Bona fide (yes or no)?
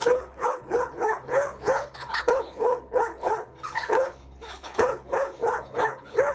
no